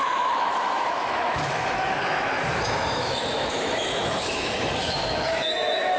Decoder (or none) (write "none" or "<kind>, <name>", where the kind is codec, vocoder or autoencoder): autoencoder, DAC-VAE